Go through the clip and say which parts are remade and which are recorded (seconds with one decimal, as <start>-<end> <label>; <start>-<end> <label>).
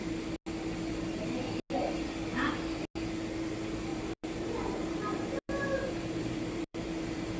0.0-3.9 recorded; 3.9-7.4 remade